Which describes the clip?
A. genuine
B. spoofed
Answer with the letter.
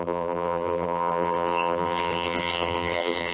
B